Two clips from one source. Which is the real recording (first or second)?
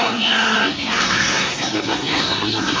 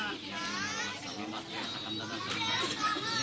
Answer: second